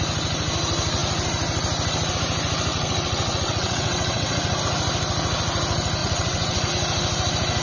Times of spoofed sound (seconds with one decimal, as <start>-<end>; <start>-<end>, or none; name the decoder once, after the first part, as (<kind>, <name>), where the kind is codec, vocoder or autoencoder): 2.7-4.6 (vocoder, WaveNeXt); 6.0-6.7